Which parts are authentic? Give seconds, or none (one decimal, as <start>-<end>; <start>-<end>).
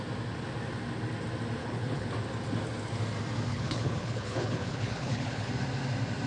0.0-1.6; 2.1-3.5; 5.5-6.3